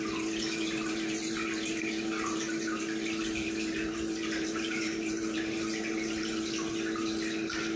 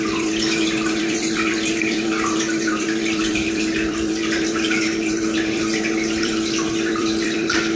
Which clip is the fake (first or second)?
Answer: second